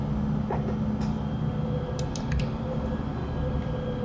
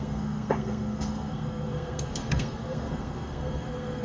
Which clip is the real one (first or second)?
first